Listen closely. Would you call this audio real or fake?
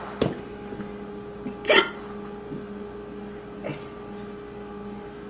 real